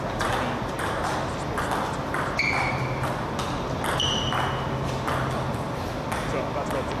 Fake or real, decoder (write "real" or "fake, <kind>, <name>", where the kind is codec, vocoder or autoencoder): real